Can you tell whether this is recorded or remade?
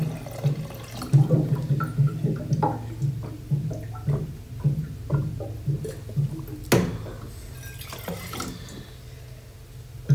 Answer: recorded